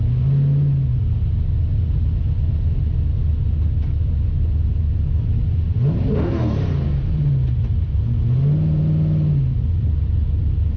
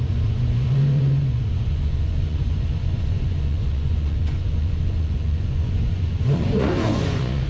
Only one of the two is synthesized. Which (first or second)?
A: second